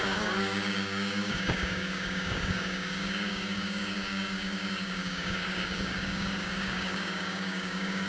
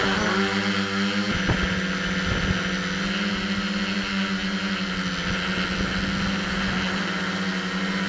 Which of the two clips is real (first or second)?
second